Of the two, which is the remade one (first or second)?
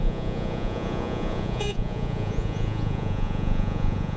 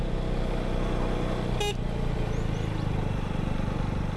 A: first